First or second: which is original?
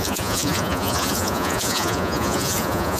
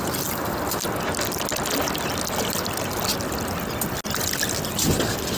second